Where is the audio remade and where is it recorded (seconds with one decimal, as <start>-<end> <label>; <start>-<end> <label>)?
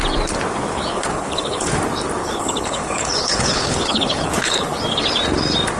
0.0-0.7 recorded; 0.7-1.7 remade; 1.7-2.2 recorded; 2.2-4.8 remade; 4.8-5.8 recorded